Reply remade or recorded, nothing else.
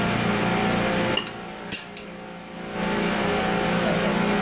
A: recorded